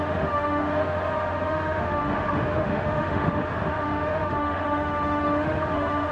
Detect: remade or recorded remade